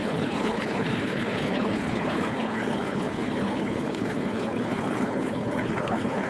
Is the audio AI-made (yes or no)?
yes